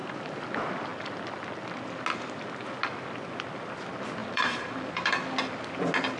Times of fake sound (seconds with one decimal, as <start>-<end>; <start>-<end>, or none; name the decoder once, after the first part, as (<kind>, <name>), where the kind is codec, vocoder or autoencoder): 0.0-0.5 (vocoder, BigVGAN v2); 4.2-5.2